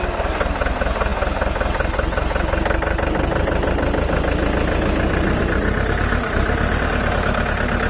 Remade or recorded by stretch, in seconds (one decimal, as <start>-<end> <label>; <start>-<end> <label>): 0.0-7.9 recorded